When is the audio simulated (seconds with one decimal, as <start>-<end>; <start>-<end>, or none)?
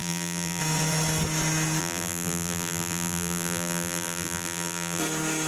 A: 0.0-0.6; 1.8-5.0